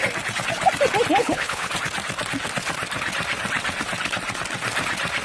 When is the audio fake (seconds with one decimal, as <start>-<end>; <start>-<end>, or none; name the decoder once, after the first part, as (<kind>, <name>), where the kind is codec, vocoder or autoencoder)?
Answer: 1.2-1.7 (codec, HILCodec)